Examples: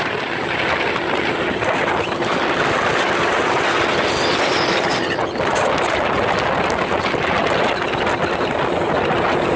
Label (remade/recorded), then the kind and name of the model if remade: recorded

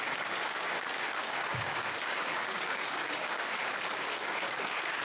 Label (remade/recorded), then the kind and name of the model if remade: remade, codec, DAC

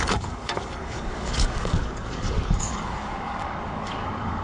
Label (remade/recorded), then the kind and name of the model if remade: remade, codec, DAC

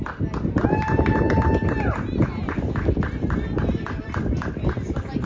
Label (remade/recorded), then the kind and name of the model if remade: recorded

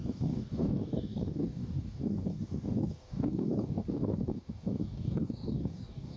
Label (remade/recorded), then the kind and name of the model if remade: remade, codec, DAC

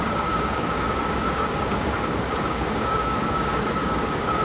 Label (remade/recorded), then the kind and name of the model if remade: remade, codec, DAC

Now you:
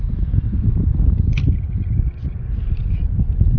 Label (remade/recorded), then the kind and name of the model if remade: recorded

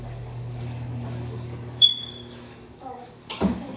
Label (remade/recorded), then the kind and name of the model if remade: remade, codec, DAC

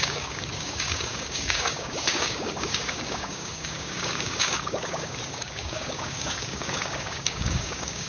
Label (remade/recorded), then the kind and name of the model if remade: remade, codec, DAC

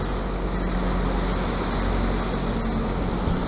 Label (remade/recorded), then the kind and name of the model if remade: recorded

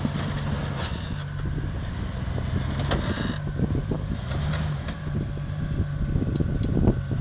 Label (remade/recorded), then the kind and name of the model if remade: recorded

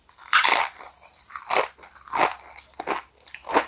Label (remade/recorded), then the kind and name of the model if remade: recorded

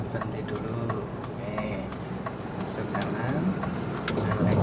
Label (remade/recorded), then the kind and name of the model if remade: recorded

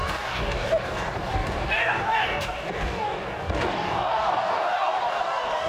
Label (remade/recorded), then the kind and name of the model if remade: remade, codec, DAC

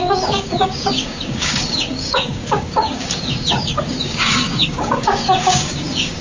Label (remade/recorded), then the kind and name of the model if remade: remade, codec, DAC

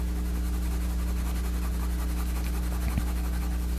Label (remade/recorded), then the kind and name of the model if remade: recorded